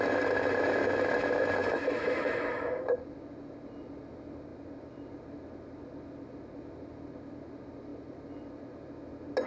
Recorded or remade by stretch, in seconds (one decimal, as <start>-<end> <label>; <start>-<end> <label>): 0.0-1.6 recorded; 1.6-3.0 remade; 3.0-9.5 recorded